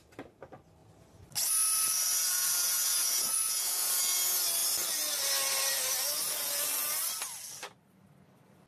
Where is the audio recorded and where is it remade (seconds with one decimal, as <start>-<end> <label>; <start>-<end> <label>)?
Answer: 0.0-2.2 recorded; 2.2-3.9 remade; 3.9-8.7 recorded